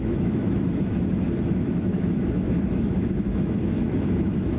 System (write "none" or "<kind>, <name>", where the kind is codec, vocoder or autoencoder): autoencoder, DAC-VAE